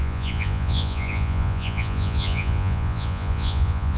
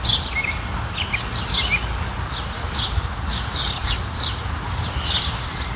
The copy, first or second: first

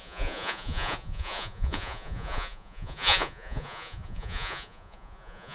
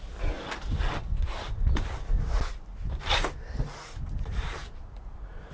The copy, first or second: first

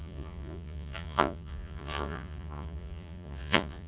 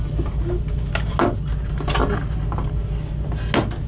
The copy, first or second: first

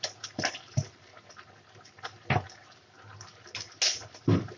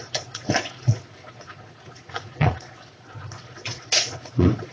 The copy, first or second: second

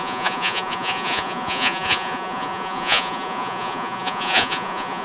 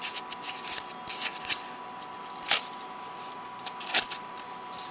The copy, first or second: first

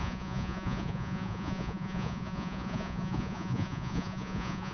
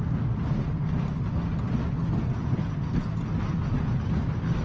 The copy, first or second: first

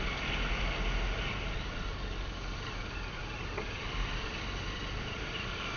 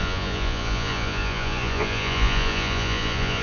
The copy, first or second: second